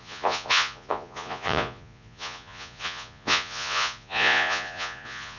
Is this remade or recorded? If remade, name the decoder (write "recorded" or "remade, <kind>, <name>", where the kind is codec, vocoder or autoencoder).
remade, vocoder, Vocos